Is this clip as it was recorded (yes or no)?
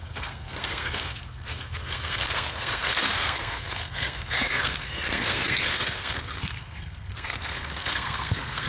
no